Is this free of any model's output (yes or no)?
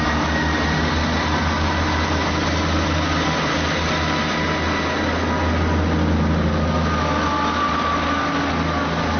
yes